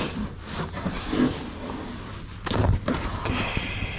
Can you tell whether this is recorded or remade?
recorded